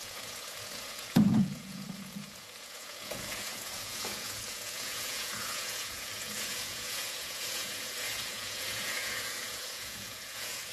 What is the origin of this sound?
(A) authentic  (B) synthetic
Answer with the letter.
B